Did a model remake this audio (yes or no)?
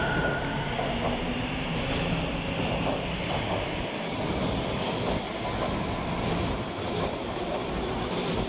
no